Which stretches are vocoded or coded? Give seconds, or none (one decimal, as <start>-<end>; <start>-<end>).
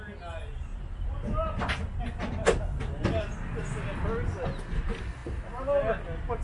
none